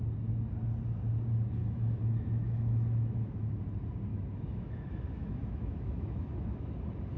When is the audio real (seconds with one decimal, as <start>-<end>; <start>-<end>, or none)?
0.0-1.6; 3.6-4.1; 6.6-7.2